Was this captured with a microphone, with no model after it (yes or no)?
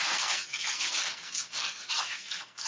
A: no